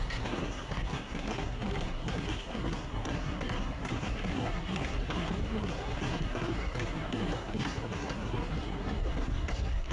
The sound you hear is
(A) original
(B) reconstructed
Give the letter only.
B